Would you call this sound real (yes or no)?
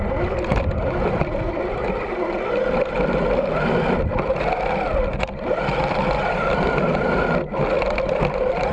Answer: yes